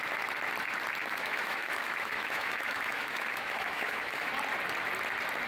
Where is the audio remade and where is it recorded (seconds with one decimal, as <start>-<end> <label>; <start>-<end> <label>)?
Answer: 0.0-1.0 recorded; 1.0-4.3 remade; 4.3-5.5 recorded